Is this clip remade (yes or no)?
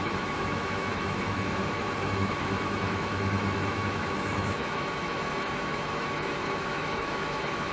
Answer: yes